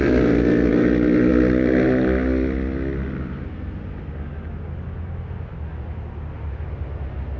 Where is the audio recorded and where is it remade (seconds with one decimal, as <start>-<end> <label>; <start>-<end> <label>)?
0.0-7.4 recorded